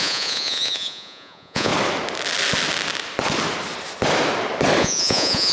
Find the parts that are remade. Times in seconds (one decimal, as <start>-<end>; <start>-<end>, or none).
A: 0.0-1.7; 4.8-5.5